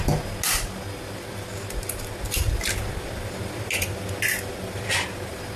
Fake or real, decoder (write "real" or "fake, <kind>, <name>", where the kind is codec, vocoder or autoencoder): real